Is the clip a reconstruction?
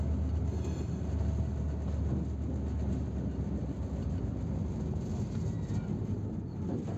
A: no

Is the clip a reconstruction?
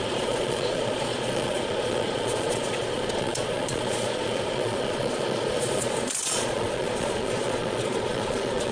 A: yes